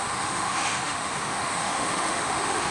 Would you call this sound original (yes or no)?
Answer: no